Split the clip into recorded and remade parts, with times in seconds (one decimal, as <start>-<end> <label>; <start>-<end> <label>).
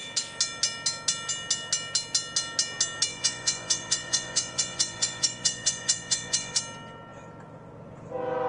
0.0-3.1 recorded; 3.1-6.6 remade; 6.6-8.5 recorded